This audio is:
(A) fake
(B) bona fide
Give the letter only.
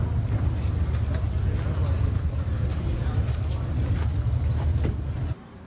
B